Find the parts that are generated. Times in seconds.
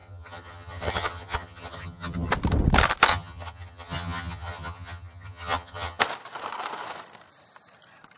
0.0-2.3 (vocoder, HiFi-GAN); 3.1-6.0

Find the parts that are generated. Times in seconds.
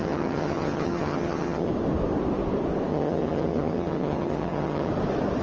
0.0-1.7 (vocoder, HiFi-GAN); 2.9-4.9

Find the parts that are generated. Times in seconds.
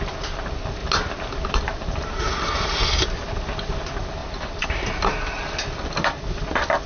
0.8-2.2 (vocoder, BigVGAN v2); 4.2-6.9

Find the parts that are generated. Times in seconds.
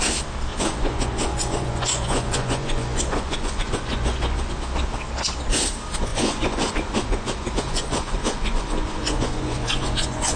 0.5-4.5 (vocoder, Vocos); 6.1-10.4